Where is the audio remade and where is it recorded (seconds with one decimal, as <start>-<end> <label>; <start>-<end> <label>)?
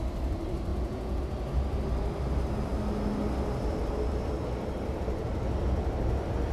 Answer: 0.0-0.7 recorded; 0.7-1.2 remade; 1.2-6.5 recorded